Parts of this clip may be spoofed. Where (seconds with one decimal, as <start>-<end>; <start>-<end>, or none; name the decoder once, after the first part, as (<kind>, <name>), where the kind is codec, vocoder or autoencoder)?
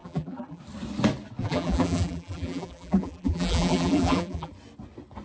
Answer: 0.0-0.6 (vocoder, BigVGAN v2); 1.4-4.5